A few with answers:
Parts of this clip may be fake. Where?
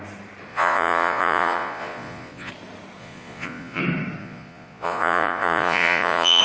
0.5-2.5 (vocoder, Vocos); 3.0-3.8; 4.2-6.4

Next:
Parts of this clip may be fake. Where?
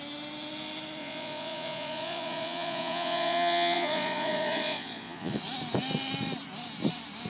1.0-5.4 (vocoder, Vocos)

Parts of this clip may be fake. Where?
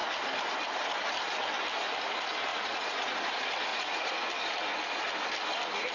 2.5-3.3 (vocoder, Vocos); 3.7-4.3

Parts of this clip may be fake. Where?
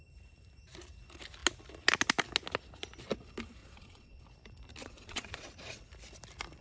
3.6-4.2 (vocoder, Vocos); 4.8-5.8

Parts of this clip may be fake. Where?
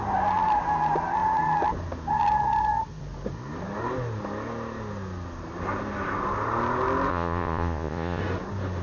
7.1-8.2 (vocoder, Vocos)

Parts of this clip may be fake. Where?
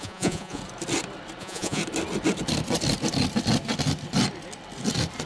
0.0-0.6 (vocoder, Vocos); 1.4-1.8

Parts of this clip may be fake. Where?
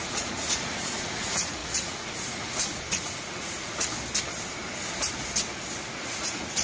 0.0-3.9 (vocoder, Vocos); 5.9-6.6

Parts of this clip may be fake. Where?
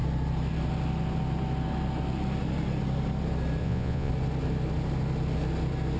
3.6-4.1 (vocoder, Vocos)